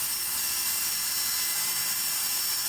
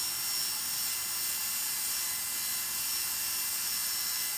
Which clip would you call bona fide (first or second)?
second